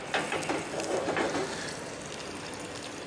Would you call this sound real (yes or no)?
yes